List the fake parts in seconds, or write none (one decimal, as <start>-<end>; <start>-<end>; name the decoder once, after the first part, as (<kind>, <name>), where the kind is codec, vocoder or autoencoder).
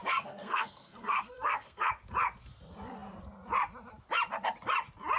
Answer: 0.0-1.9 (codec, SNAC)